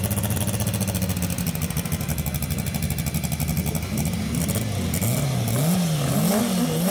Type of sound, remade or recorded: recorded